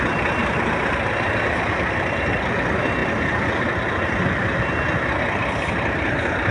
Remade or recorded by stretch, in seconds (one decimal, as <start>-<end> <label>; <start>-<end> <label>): 0.0-0.4 recorded; 0.4-2.4 remade; 2.4-6.5 recorded